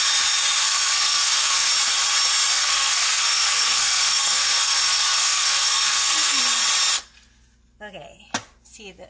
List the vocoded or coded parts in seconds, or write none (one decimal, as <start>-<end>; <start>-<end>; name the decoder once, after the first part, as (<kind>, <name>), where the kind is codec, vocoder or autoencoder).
0.6-1.7 (codec, SNAC); 2.5-6.4